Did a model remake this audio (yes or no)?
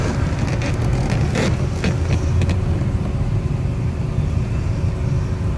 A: no